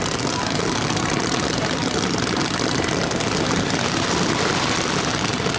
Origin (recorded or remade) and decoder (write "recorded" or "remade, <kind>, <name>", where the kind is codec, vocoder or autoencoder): recorded